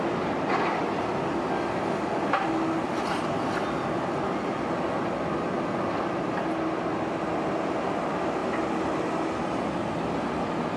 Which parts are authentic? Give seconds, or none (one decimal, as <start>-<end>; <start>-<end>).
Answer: 0.0-10.8